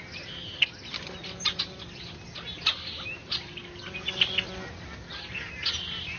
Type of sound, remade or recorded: recorded